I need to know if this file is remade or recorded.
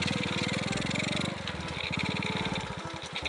recorded